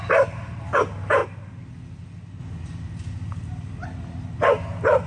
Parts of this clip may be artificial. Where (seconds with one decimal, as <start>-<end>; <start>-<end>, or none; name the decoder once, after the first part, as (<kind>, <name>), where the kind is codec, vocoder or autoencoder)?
none